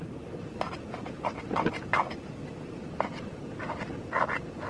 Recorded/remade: recorded